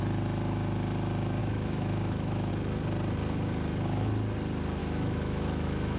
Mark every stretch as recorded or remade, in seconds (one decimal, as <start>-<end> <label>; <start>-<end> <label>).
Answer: 0.0-1.4 recorded; 1.4-2.5 remade; 2.5-4.8 recorded; 4.8-6.0 remade